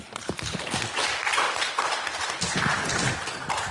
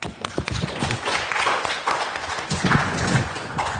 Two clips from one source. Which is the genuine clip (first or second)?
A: first